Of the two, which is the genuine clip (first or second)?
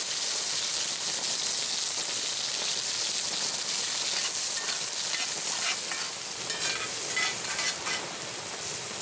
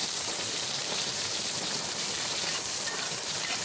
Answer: first